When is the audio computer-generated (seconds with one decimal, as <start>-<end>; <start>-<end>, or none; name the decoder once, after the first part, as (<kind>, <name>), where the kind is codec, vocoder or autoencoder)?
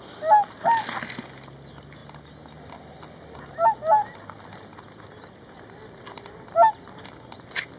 none